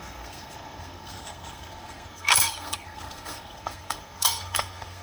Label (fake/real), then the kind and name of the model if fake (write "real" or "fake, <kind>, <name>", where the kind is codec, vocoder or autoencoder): fake, codec, SNAC